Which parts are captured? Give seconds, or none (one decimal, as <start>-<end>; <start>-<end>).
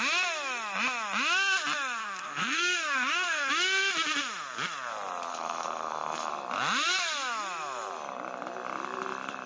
0.0-2.0; 3.5-5.3; 6.3-9.5